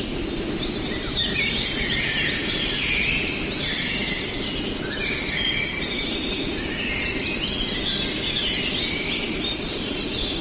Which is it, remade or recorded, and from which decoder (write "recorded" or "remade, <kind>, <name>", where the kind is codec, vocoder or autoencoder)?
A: recorded